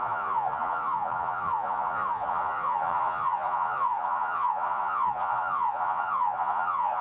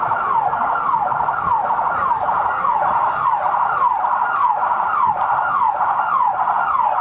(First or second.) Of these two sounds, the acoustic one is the second